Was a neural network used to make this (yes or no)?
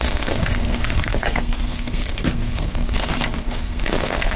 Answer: yes